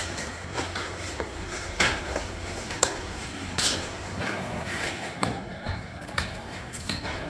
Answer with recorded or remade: remade